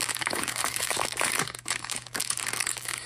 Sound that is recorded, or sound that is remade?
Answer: remade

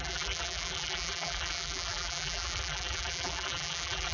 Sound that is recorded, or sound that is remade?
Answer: remade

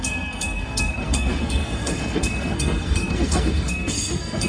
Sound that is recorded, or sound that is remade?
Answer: remade